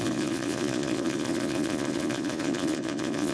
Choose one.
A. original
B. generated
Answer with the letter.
B